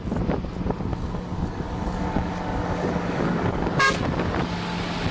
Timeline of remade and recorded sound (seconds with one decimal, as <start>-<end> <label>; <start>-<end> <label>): 0.0-0.9 recorded; 0.9-4.0 remade; 4.0-5.1 recorded